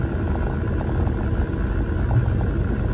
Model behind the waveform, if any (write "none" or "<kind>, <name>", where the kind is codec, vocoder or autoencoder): none